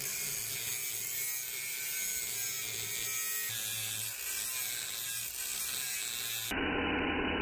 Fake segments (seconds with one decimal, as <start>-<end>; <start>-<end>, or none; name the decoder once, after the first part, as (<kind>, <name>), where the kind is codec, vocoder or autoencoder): none